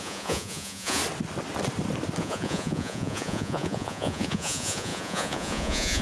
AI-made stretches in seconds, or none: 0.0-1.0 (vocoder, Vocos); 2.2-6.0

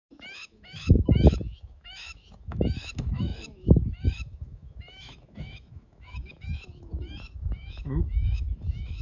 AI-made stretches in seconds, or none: 0.0-9.0 (autoencoder, DAC-VAE)

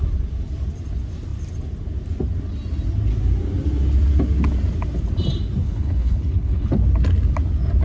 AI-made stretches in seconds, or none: 5.6-6.7 (codec, HILCodec)

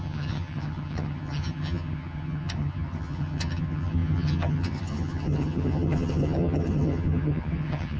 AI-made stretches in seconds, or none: 0.0-8.0 (vocoder, HiFi-GAN)

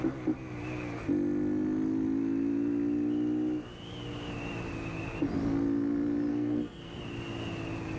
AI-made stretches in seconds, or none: 6.3-7.0 (codec, SNAC)

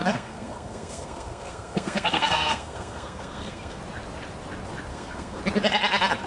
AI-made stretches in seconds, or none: 0.0-3.8 (codec, SNAC); 4.9-5.4